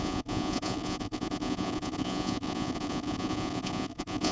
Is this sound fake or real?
fake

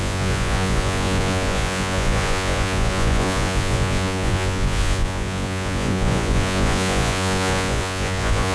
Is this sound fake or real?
fake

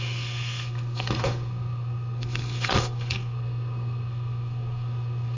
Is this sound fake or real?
fake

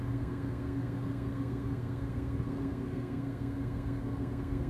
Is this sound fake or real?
fake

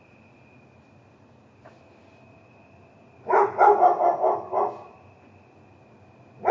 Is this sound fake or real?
real